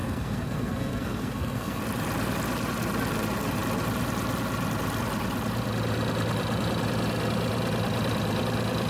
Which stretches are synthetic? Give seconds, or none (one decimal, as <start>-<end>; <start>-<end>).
0.0-1.8

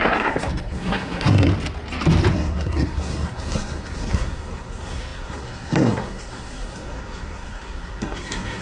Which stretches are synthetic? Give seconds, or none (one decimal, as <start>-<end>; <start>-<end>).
0.0-1.5; 2.3-8.6

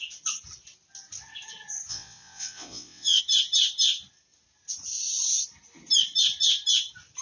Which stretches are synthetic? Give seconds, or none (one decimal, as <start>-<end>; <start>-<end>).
1.9-3.2

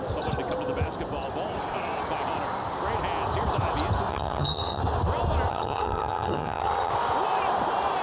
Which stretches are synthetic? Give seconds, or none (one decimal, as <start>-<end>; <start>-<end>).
4.1-4.8; 5.5-6.9